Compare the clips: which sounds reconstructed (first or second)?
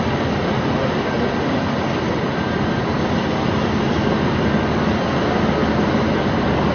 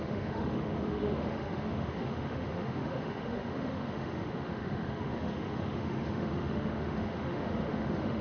second